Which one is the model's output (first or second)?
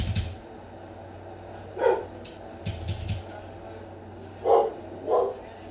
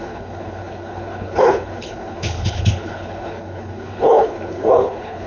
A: second